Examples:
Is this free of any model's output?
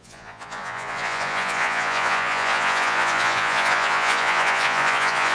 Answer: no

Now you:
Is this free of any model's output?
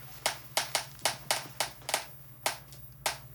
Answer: yes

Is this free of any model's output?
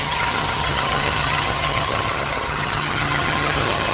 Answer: no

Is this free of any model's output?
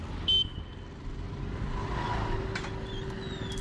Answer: yes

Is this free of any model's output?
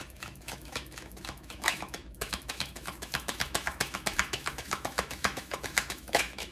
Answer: no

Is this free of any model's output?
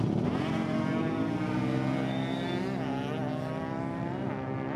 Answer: yes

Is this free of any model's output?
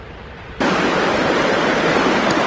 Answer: no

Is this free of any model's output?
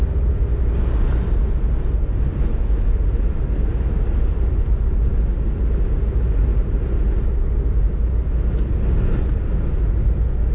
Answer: yes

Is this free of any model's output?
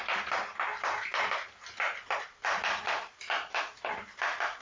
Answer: yes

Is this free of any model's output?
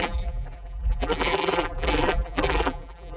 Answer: no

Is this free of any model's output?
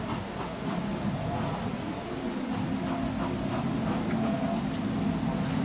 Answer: yes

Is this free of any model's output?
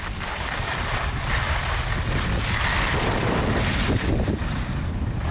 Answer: yes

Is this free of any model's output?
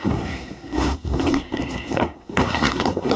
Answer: no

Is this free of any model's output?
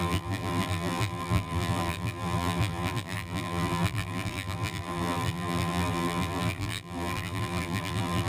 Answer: no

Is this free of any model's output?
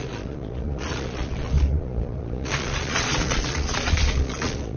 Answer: no